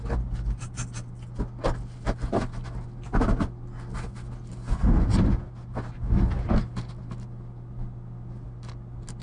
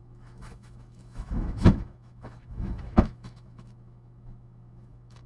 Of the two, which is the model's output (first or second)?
second